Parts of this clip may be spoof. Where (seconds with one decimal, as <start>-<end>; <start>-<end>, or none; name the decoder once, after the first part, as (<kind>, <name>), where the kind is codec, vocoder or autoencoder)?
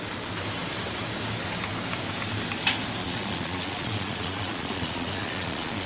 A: 3.0-5.9 (vocoder, Vocos)